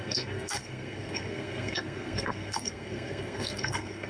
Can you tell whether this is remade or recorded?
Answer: remade